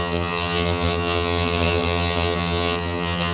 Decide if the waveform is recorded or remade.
remade